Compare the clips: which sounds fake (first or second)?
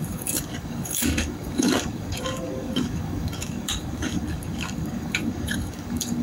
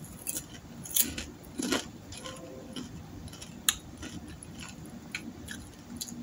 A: first